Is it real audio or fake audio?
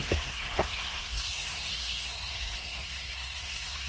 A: fake